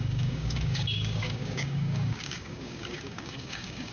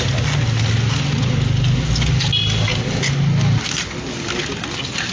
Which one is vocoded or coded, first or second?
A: first